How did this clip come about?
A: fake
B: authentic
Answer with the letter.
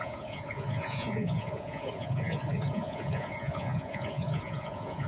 A